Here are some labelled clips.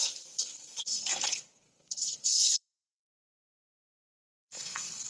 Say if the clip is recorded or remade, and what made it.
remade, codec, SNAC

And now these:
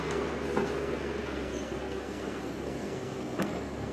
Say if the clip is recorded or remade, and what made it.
remade, codec, SNAC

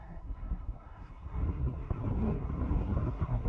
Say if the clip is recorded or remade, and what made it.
remade, codec, SNAC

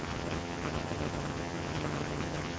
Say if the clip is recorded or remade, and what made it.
remade, vocoder, HiFi-GAN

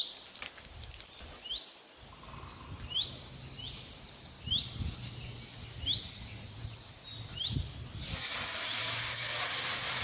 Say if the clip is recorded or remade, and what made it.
recorded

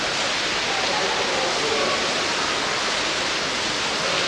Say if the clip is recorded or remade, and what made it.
recorded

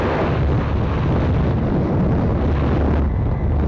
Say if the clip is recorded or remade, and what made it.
recorded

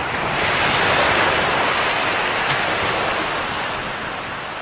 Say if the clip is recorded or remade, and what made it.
recorded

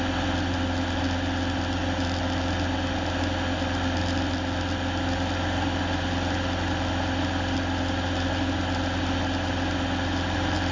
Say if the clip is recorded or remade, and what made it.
recorded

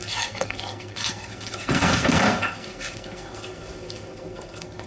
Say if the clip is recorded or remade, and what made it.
remade, codec, SNAC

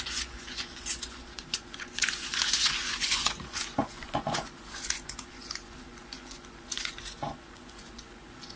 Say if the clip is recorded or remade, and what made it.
remade, vocoder, Vocos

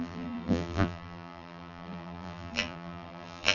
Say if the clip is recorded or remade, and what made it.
remade, vocoder, BigVGAN v2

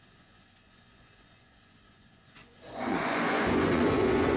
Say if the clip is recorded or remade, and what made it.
remade, vocoder, Vocos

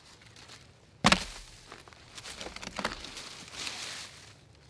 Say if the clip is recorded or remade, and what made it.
recorded